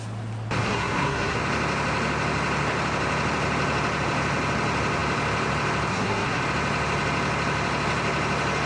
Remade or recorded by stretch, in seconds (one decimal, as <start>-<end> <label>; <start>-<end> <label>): 0.0-0.6 recorded; 0.6-1.4 remade; 1.4-5.9 recorded; 5.9-6.4 remade; 6.4-8.7 recorded